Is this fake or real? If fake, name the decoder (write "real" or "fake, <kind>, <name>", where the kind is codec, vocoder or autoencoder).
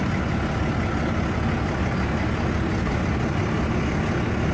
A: real